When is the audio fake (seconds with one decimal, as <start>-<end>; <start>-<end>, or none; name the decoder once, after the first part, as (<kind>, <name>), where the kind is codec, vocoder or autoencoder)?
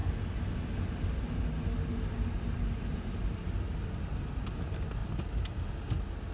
1.6-5.0 (vocoder, BigVGAN v2)